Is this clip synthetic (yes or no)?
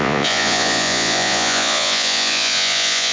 yes